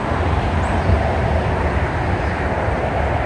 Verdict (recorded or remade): recorded